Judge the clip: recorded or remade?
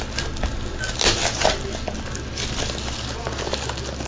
recorded